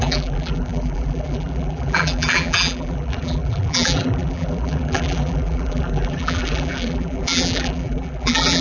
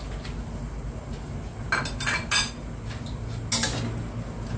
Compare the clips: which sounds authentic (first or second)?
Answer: second